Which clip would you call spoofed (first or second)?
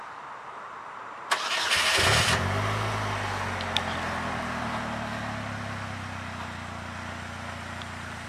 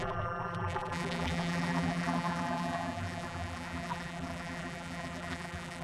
second